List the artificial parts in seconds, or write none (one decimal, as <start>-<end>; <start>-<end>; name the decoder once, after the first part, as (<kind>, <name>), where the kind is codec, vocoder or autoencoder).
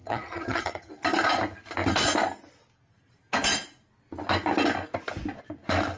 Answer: 0.0-0.9 (vocoder, HiFi-GAN)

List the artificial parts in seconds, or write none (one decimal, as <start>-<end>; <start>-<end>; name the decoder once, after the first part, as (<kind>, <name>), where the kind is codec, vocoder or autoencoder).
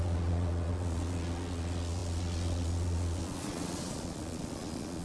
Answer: 0.0-5.0 (vocoder, Vocos)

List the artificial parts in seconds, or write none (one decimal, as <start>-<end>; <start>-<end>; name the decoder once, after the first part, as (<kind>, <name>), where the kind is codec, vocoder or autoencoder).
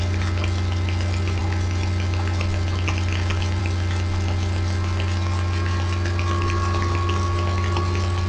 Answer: none